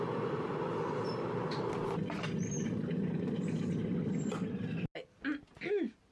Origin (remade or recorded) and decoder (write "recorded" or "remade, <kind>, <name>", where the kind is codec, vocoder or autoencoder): recorded